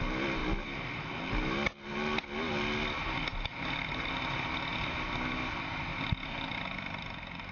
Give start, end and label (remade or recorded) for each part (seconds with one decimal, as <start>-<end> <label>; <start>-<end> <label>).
0.0-7.5 recorded